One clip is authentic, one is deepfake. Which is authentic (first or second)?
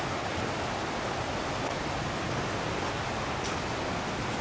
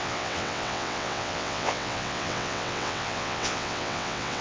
first